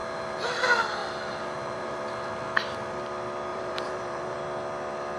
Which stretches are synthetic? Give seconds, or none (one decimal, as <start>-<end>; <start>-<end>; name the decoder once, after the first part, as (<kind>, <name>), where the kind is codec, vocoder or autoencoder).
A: 0.0-0.6 (vocoder, BigVGAN v2); 1.0-1.9; 3.5-4.4